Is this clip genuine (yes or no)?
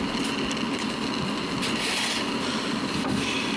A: yes